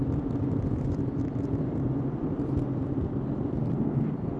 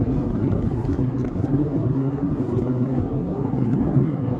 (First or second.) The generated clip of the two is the second